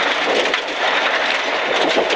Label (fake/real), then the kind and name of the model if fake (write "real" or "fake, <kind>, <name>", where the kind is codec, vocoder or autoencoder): real